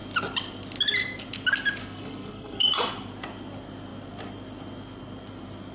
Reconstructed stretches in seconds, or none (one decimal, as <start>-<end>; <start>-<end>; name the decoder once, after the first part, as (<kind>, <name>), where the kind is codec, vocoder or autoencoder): 1.8-2.7 (codec, SNAC)